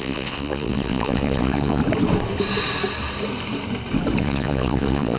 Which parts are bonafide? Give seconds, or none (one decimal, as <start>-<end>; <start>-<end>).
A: 1.8-4.2